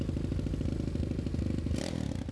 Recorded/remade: recorded